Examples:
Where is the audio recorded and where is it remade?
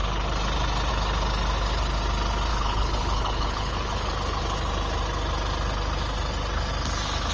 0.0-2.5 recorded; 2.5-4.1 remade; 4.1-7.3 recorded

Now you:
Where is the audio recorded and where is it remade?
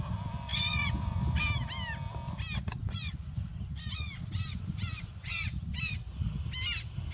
0.0-0.5 recorded; 0.5-1.4 remade; 1.4-2.8 recorded; 2.8-6.0 remade; 6.0-7.1 recorded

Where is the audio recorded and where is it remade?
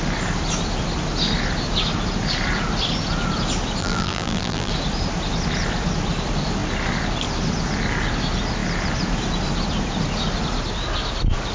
0.0-3.8 recorded; 3.8-4.7 remade; 4.7-11.5 recorded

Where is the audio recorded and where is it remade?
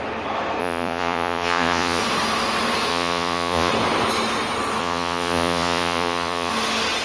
0.0-0.6 recorded; 0.6-2.0 remade; 2.0-2.9 recorded; 2.9-3.7 remade; 3.7-4.8 recorded; 4.8-6.5 remade; 6.5-7.0 recorded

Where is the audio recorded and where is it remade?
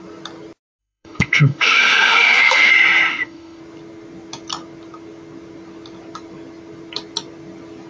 0.0-0.8 recorded; 0.8-2.7 remade; 2.7-3.1 recorded; 3.1-3.6 remade; 3.6-7.9 recorded